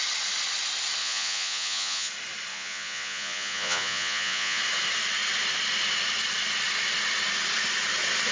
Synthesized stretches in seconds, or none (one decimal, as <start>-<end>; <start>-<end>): 1.0-2.1; 2.5-4.6